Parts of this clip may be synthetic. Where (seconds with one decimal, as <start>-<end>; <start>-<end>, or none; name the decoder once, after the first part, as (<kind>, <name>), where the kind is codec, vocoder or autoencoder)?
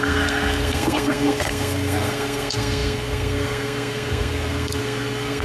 0.0-5.4 (codec, SNAC)